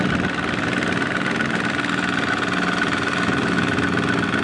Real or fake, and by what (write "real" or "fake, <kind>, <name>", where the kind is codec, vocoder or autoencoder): real